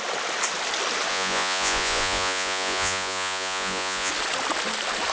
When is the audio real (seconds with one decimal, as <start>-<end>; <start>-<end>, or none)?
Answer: 0.0-1.1; 4.1-5.1

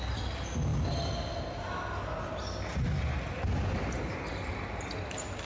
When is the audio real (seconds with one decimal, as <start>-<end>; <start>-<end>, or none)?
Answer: 0.0-5.4

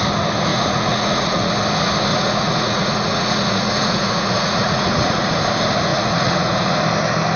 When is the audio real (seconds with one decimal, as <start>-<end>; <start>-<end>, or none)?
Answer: 0.0-0.5; 1.5-2.1; 5.3-5.9; 6.8-7.4

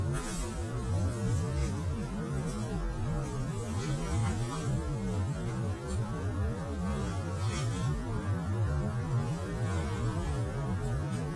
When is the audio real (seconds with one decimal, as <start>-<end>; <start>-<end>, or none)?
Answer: 0.0-1.6; 2.2-6.0; 6.6-11.4

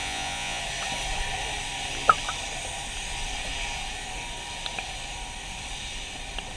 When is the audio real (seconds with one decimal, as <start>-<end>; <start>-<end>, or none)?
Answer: 0.6-6.6

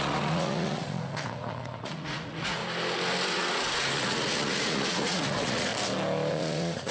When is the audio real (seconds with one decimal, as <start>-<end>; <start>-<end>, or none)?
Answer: 2.6-3.3; 5.7-6.3

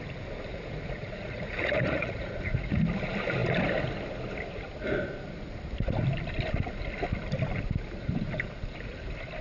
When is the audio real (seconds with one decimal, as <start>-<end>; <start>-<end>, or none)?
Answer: 0.0-0.5; 2.8-9.4